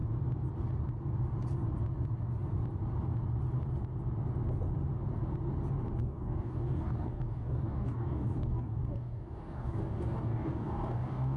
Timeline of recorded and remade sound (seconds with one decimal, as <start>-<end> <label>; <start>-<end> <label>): 0.0-6.0 recorded; 6.0-11.4 remade